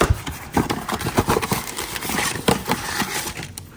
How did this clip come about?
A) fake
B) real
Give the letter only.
B